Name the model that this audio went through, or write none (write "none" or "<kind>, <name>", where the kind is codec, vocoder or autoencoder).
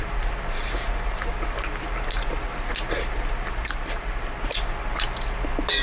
none